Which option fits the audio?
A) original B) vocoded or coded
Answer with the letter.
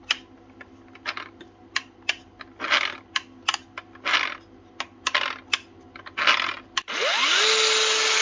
A